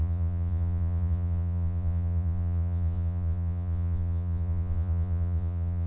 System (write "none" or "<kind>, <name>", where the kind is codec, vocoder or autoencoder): vocoder, Vocos